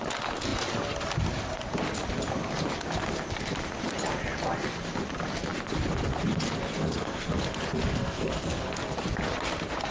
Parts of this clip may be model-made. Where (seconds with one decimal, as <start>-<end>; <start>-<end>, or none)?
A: 6.7-7.5; 7.9-8.7